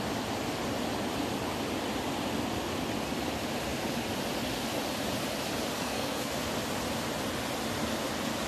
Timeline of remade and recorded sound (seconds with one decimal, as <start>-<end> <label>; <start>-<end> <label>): 0.0-5.7 recorded; 5.7-6.3 remade; 6.3-8.5 recorded